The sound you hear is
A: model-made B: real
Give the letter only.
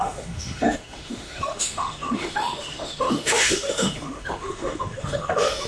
A